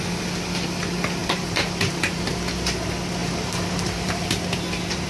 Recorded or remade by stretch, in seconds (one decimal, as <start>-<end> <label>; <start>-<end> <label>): 0.0-1.2 recorded; 1.2-2.3 remade; 2.3-3.2 recorded; 3.2-4.3 remade; 4.3-5.1 recorded